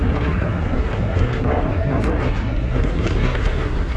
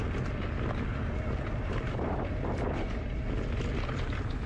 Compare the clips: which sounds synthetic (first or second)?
first